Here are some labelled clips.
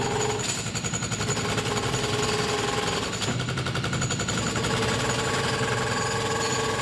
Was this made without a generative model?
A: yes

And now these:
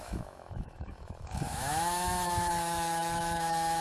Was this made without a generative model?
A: no